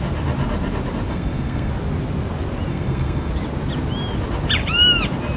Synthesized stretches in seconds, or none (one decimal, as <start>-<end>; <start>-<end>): 1.1-1.7; 2.7-3.3